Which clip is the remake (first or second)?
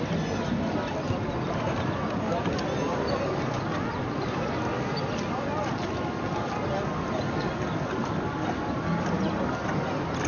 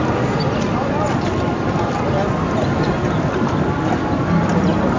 second